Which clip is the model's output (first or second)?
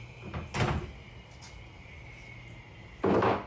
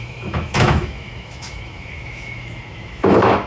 second